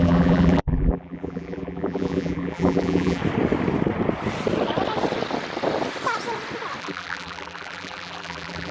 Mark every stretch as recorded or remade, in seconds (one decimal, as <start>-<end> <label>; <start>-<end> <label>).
0.0-3.2 remade; 3.2-6.8 recorded; 6.8-8.7 remade